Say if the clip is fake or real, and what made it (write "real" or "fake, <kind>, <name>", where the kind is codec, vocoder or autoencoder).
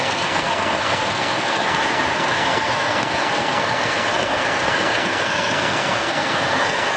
fake, codec, SNAC